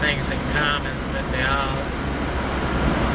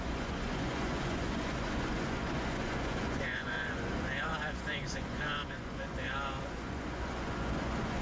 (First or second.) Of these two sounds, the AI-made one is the second